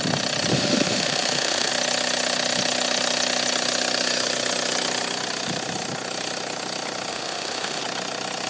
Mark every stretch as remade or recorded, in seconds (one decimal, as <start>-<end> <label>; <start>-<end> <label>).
0.0-0.5 recorded; 0.5-1.7 remade; 1.7-7.1 recorded; 7.1-7.8 remade; 7.8-8.5 recorded